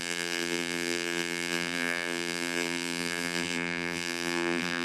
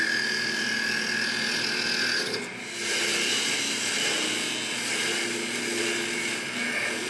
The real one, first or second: second